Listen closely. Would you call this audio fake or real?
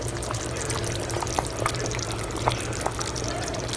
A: real